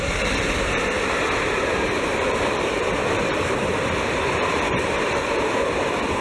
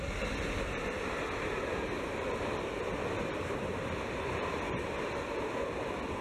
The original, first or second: second